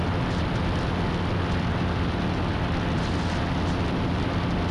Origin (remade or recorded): recorded